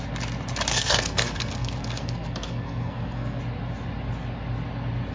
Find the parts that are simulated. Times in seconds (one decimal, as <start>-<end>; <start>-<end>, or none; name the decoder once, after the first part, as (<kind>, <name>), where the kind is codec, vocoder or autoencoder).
0.7-3.4 (codec, SNAC)